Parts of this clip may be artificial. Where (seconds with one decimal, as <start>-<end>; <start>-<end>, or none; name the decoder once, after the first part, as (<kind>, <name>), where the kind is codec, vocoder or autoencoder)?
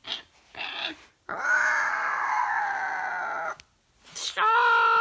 1.9-2.6 (codec, SNAC)